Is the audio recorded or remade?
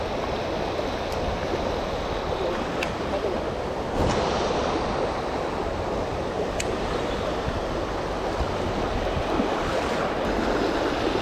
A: recorded